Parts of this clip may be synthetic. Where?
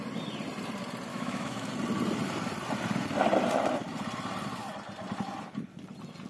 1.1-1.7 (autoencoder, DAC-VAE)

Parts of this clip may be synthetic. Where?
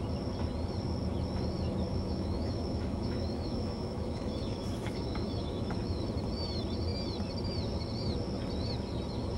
1.9-6.0 (autoencoder, DAC-VAE)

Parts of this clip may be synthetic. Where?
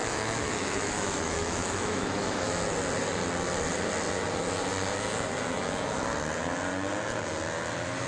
0.0-2.6 (autoencoder, DAC-VAE)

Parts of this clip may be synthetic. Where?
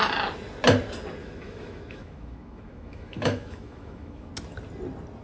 1.2-4.3 (autoencoder, DAC-VAE)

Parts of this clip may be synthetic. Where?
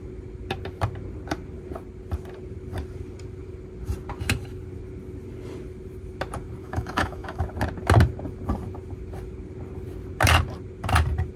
6.6-7.4 (autoencoder, DAC-VAE)